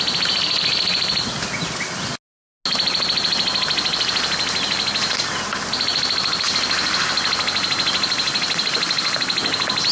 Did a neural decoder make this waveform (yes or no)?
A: no